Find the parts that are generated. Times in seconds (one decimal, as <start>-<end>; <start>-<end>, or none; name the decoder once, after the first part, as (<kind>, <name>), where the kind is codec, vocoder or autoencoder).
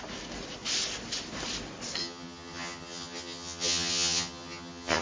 2.0-5.0 (vocoder, HiFi-GAN)